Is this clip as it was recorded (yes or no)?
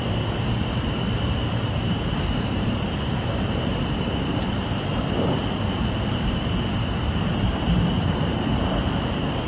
no